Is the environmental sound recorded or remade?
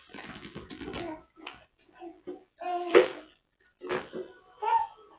remade